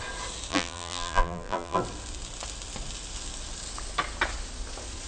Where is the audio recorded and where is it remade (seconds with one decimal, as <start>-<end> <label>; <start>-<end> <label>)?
0.0-0.5 recorded; 0.5-1.8 remade; 1.8-5.1 recorded

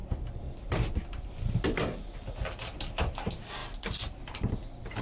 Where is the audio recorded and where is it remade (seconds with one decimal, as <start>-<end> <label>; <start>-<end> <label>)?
0.0-2.9 remade; 2.9-3.6 recorded; 3.6-4.5 remade; 4.5-5.0 recorded

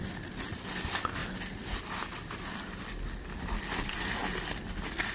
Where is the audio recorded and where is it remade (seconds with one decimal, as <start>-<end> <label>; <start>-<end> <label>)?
0.0-5.1 recorded

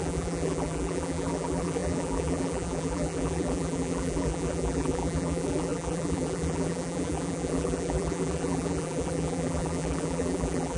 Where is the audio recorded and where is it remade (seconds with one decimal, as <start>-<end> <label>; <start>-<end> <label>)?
0.0-10.8 remade

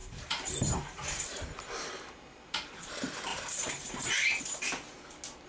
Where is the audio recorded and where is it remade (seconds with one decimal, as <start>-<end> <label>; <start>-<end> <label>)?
0.0-2.8 remade; 2.8-3.3 recorded; 3.3-4.4 remade; 4.4-5.5 recorded

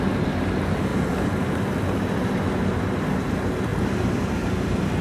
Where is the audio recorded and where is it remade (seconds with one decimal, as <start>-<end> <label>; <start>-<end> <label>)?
0.0-0.9 recorded; 0.9-1.6 remade; 1.6-3.7 recorded; 3.7-4.3 remade; 4.3-5.0 recorded